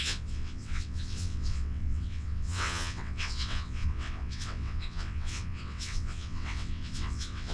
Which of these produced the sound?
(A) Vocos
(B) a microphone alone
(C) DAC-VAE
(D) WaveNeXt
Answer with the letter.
D